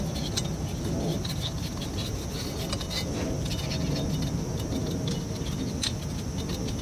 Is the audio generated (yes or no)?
yes